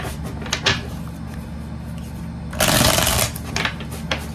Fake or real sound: real